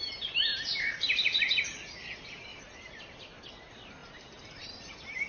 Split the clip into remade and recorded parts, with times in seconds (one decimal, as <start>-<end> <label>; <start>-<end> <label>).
0.0-0.5 recorded; 0.5-1.6 remade; 1.6-2.5 recorded; 2.5-3.0 remade; 3.0-4.0 recorded; 4.0-4.6 remade; 4.6-5.3 recorded